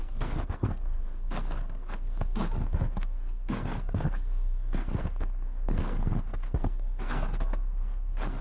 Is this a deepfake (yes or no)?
yes